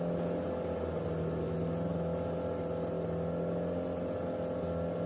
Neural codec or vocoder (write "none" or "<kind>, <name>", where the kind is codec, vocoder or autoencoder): none